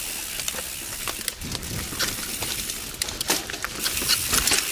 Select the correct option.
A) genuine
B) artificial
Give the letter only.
A